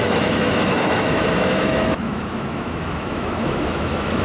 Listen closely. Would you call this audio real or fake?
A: fake